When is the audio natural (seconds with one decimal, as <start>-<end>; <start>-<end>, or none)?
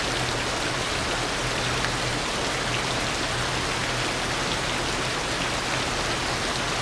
0.0-6.8